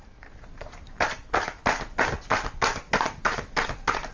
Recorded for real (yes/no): yes